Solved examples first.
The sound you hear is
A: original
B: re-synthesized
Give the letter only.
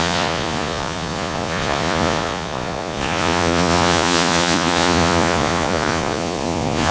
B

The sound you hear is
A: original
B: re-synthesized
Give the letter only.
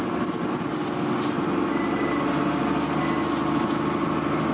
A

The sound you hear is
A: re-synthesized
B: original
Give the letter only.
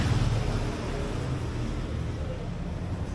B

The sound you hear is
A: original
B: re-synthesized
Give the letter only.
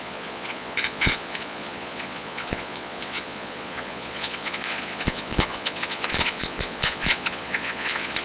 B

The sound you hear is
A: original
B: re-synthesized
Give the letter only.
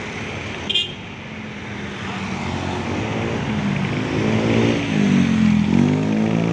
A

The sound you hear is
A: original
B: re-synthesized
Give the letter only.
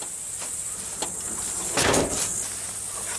A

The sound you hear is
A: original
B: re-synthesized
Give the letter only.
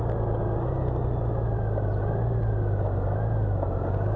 A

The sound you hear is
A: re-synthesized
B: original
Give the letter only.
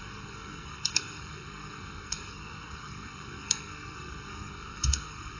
A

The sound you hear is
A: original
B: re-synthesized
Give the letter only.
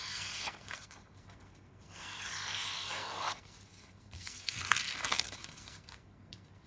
B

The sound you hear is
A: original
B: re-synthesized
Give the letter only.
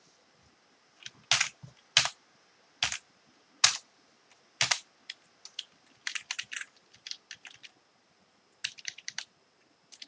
A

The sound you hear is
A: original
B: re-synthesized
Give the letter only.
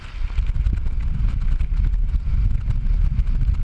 A